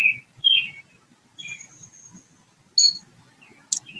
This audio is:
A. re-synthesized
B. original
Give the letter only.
B